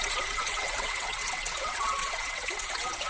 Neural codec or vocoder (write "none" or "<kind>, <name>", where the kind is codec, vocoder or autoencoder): vocoder, WaveNeXt